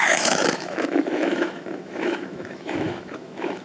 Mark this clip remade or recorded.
remade